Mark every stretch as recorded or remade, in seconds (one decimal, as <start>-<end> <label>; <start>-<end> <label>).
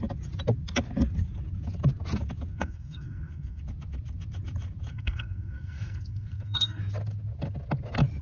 0.0-2.5 recorded; 2.5-3.6 remade; 3.6-4.9 recorded; 4.9-6.8 remade; 6.8-8.2 recorded